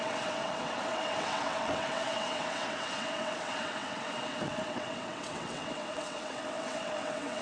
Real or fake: fake